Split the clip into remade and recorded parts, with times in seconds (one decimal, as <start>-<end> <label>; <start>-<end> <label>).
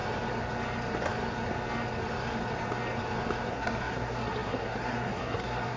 0.0-3.5 recorded; 3.5-5.8 remade